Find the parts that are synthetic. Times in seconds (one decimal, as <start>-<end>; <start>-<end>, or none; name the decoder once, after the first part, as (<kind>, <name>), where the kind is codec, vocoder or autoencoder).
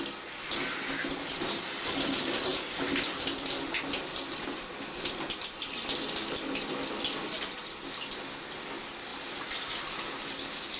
none